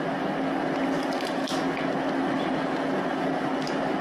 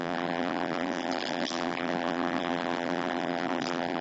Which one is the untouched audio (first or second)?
first